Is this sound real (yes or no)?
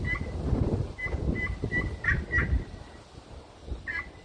yes